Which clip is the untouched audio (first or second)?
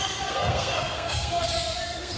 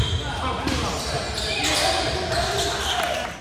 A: second